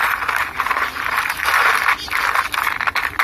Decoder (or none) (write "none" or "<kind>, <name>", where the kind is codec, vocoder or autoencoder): none